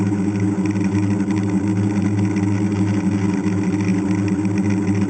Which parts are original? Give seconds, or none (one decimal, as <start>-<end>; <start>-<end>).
0.0-5.1